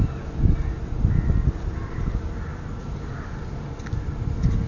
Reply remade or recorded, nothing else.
recorded